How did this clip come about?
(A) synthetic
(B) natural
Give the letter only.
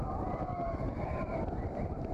B